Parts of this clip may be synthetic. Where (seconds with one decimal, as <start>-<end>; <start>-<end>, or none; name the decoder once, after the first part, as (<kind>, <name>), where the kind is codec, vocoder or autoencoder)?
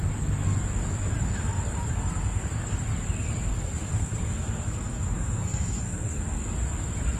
1.9-2.6 (codec, SNAC); 3.5-6.4